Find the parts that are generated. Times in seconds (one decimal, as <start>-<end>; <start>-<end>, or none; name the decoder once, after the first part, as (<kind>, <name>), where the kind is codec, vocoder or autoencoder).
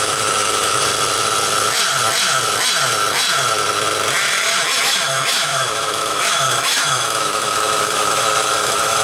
0.0-0.9 (autoencoder, DAC-VAE); 4.8-9.0